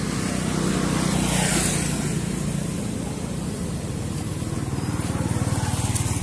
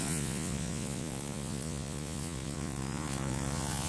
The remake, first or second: second